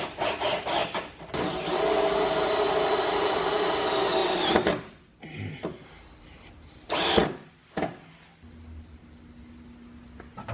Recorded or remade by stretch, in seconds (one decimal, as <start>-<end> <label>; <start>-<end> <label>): 0.0-10.5 recorded